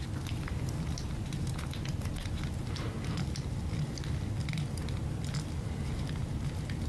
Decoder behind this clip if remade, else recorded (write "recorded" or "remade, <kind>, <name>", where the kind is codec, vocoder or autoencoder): recorded